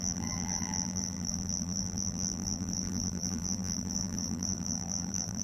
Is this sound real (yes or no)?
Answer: no